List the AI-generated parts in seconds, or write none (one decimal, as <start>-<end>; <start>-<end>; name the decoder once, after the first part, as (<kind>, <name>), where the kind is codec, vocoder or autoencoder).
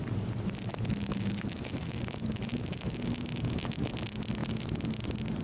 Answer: 0.7-3.9 (autoencoder, DAC-VAE); 4.4-5.0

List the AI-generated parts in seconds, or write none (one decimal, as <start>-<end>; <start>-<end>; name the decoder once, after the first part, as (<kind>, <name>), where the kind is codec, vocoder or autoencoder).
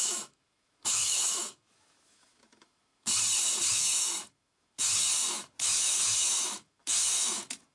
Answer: 0.0-3.1 (autoencoder, DAC-VAE); 3.7-7.7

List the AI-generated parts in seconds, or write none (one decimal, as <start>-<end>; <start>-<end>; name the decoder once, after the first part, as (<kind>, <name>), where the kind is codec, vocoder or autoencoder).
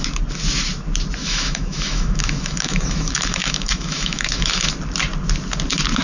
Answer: 1.2-4.7 (autoencoder, DAC-VAE)